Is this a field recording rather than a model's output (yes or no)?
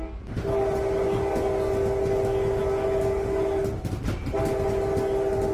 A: yes